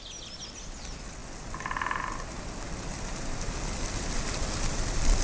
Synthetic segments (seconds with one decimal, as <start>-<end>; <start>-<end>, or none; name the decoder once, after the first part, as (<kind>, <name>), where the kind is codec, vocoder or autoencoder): none